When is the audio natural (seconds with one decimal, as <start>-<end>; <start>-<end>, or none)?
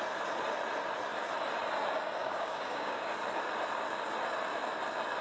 0.0-2.2; 3.0-5.2